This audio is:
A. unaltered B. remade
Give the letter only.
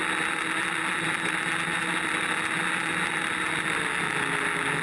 A